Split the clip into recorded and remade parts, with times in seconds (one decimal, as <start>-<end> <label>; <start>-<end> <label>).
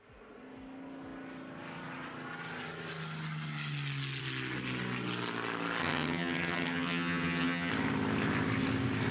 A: 0.0-5.8 recorded; 5.8-7.7 remade; 7.7-9.1 recorded